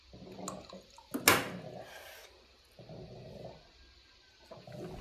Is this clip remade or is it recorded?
recorded